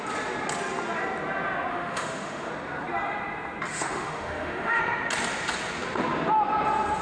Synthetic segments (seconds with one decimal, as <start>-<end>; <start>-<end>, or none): 1.7-2.5; 3.7-4.8